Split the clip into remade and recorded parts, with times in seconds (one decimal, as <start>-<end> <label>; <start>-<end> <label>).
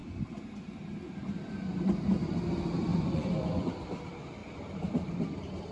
0.0-2.9 recorded; 2.9-3.7 remade; 3.7-5.7 recorded